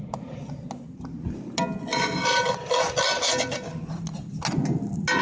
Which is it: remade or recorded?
recorded